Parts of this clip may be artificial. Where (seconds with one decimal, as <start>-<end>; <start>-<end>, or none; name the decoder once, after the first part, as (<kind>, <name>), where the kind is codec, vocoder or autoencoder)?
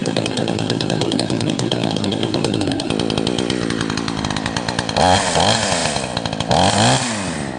0.0-2.9 (codec, SNAC)